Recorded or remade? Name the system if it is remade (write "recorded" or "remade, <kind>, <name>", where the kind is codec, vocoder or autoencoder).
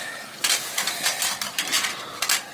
recorded